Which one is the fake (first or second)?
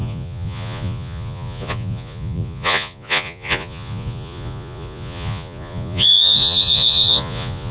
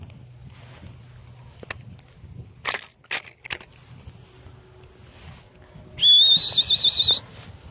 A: first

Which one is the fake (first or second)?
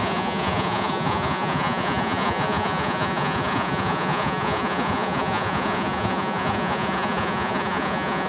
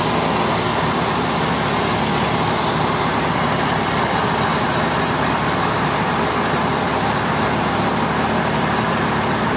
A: first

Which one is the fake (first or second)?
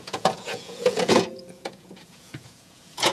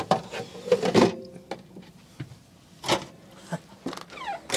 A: first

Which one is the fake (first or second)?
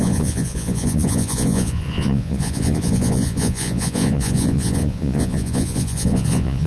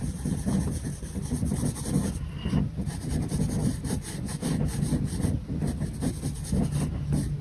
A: first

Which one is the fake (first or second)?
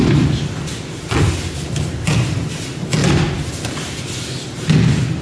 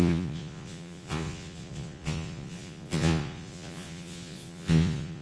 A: second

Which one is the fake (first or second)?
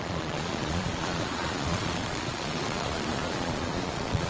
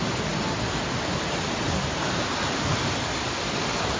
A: first